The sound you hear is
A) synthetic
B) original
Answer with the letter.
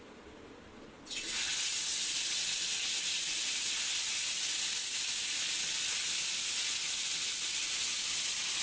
B